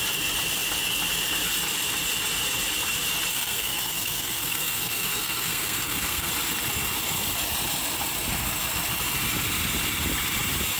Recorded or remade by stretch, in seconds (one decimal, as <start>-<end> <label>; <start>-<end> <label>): 0.0-3.3 recorded; 3.3-6.3 remade; 6.3-10.8 recorded